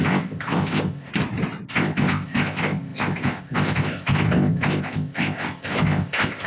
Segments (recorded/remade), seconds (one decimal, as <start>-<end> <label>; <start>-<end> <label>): 0.0-1.1 remade; 1.1-1.7 recorded; 1.7-6.5 remade